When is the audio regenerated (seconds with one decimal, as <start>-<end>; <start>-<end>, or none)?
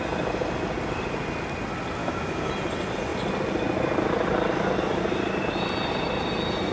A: 2.0-2.5